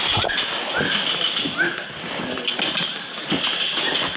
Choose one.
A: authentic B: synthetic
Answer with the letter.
A